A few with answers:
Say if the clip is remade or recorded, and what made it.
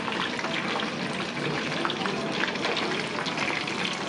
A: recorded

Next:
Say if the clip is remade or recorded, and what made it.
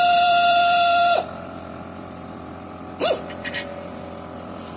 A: remade, vocoder, BigVGAN v2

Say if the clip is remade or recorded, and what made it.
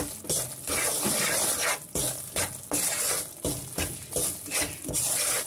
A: recorded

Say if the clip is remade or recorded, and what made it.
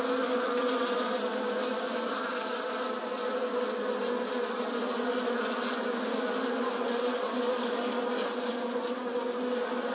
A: recorded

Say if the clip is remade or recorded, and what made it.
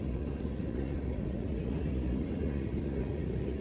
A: remade, vocoder, Vocos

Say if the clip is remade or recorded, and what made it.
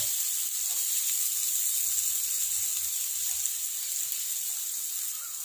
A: recorded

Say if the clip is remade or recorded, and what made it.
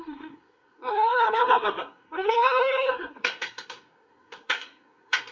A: remade, codec, SNAC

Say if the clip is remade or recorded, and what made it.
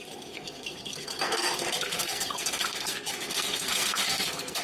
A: remade, codec, SNAC